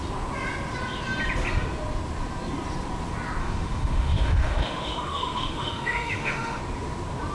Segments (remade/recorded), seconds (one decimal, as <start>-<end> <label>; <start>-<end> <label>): 0.0-3.4 recorded; 3.4-6.6 remade; 6.6-7.3 recorded